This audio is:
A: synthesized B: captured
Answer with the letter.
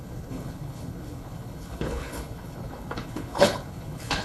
A